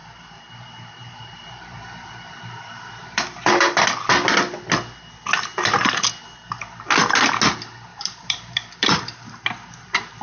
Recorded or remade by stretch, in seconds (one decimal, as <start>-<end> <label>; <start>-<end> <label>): 0.0-3.4 remade; 3.4-7.9 recorded; 7.9-10.2 remade